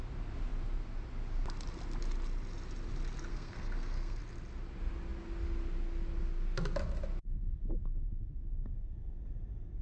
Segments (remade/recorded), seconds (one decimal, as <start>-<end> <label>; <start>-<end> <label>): 0.0-3.3 recorded; 3.3-4.2 remade; 4.2-9.8 recorded